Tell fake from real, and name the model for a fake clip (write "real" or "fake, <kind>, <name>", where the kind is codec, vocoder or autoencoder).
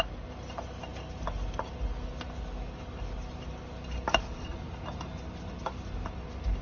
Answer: real